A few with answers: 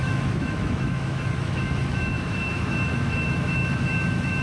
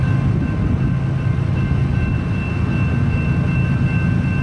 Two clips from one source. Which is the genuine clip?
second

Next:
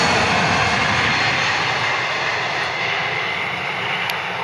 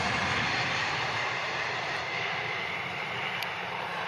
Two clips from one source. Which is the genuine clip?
first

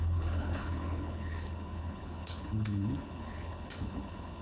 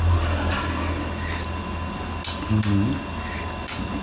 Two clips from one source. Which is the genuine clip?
second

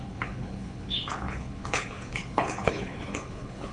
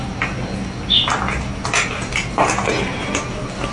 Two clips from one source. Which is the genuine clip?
second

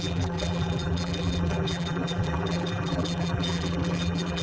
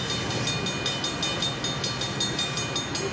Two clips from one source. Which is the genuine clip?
second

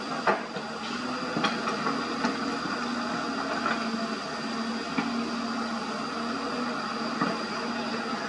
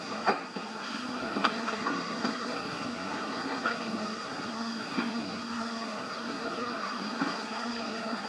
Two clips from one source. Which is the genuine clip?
first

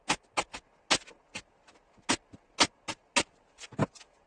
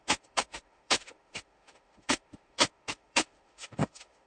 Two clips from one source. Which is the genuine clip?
first